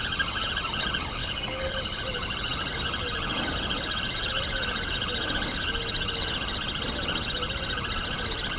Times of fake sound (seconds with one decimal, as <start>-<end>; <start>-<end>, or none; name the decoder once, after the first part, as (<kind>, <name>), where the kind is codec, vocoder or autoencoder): 1.2-1.7 (codec, DAC)